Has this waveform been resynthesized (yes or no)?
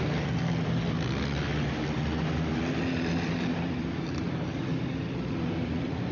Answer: no